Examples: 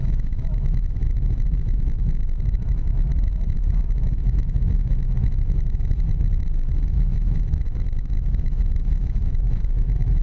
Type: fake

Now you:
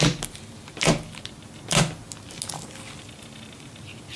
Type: real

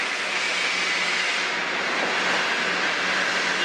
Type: real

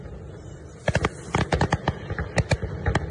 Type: real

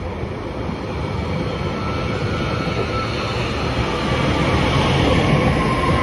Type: real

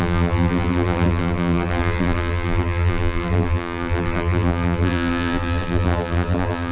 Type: fake